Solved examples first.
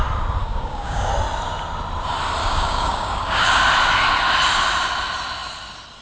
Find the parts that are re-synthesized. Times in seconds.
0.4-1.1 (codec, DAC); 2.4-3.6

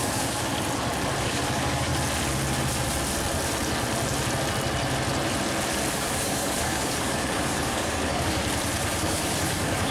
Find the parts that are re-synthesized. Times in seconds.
0.0-0.5 (codec, DAC); 1.2-1.9; 5.9-8.4; 9.0-9.9

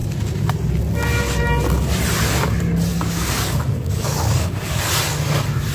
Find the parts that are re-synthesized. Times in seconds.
2.9-4.8 (codec, DAC)

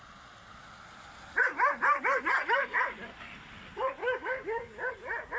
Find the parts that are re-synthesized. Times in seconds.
4.0-4.9 (codec, DAC)

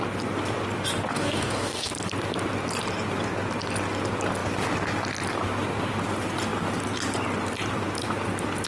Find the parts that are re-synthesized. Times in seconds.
1.1-1.9 (codec, DAC)

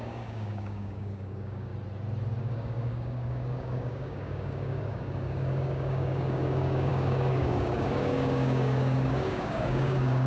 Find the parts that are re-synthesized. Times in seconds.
0.0-1.7 (codec, DAC); 2.4-10.3

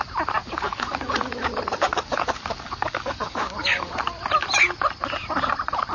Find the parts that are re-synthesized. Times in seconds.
0.4-3.9 (codec, DAC)

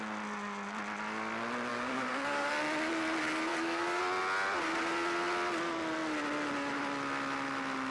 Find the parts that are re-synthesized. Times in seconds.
1.7-2.5 (codec, DAC); 3.5-4.0